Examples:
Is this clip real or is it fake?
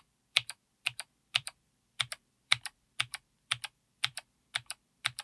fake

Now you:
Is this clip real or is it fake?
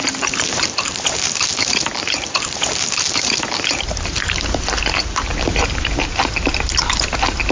fake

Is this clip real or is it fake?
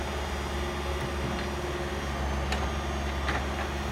real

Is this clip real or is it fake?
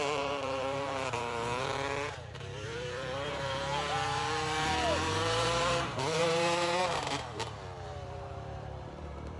fake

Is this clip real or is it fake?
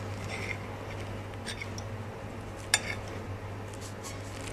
real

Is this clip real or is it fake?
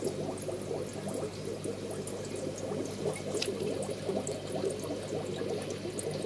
real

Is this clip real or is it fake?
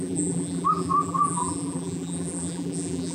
fake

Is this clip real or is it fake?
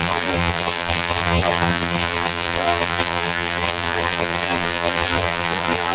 fake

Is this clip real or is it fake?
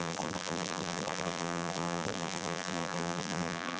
fake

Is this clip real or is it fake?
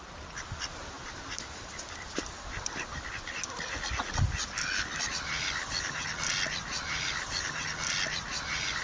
real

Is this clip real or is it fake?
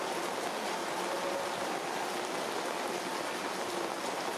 real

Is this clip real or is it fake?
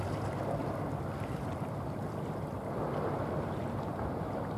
real